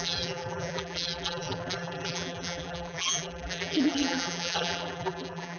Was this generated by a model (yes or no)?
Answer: yes